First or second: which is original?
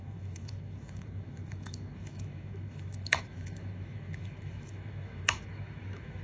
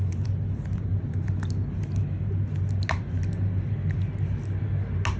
second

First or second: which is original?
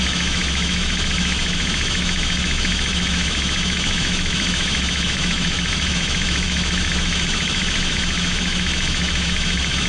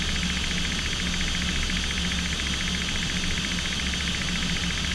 second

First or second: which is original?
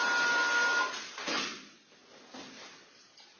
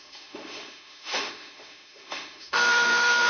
first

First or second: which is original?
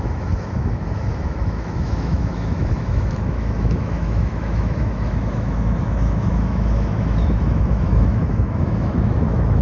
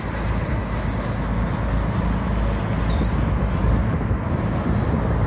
second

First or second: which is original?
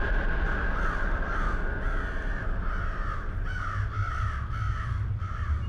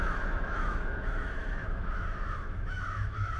first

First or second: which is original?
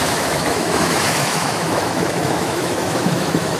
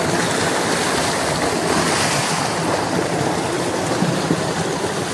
second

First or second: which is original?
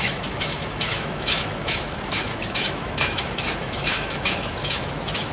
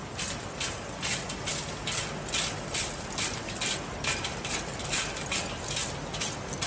second